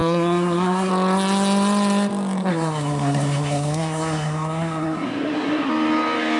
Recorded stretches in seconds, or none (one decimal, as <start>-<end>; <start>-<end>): 0.9-2.5; 5.7-6.4